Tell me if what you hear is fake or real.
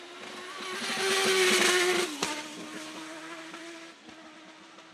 real